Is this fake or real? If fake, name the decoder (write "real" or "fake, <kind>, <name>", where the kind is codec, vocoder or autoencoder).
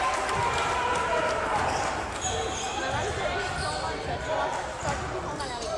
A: real